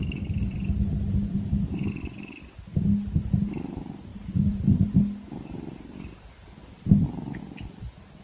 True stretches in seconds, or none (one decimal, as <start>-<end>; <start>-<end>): 0.0-4.1; 4.9-8.2